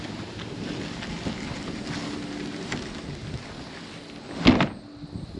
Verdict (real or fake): real